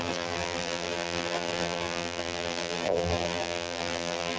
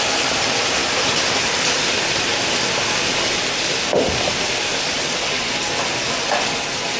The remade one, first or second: first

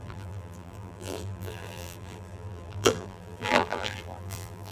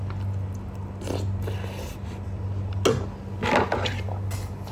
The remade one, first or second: first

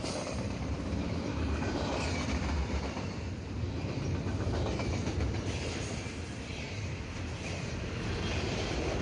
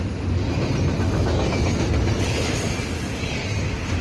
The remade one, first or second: first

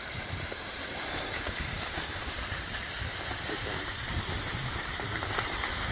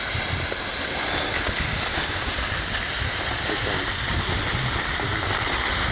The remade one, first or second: first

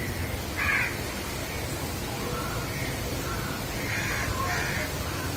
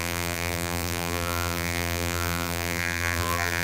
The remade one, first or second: second